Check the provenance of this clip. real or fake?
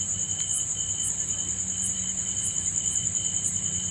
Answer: real